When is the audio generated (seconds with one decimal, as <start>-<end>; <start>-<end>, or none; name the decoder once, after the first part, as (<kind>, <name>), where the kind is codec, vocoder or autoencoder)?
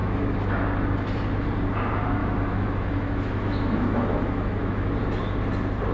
0.0-0.5 (autoencoder, DAC-VAE); 2.2-5.0